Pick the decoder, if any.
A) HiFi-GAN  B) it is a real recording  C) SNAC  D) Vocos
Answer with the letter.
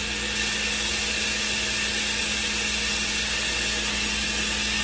B